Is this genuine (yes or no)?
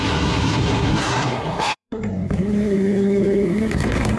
no